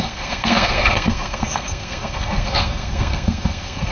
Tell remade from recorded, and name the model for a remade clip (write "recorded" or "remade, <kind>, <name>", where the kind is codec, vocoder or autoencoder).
remade, codec, SNAC